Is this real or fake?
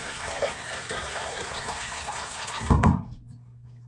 fake